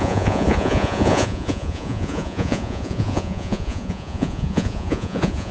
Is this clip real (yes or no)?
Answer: no